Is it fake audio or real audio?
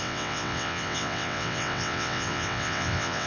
fake